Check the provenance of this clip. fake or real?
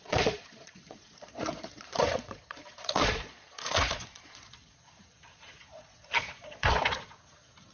fake